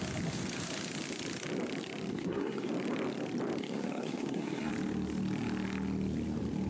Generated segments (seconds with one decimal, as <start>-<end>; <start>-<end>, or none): 2.1-2.7; 3.6-4.7

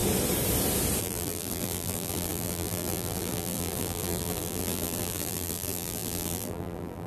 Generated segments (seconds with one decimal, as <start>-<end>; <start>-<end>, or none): 1.0-7.1

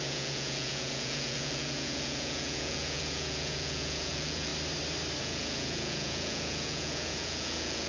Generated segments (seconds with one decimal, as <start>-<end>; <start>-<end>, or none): 0.0-4.5; 5.2-7.9

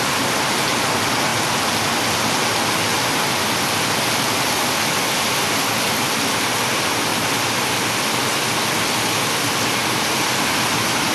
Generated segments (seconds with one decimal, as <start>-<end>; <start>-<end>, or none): 7.1-7.7

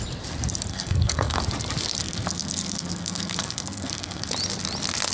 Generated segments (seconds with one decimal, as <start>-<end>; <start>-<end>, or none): 0.7-1.4; 2.0-4.3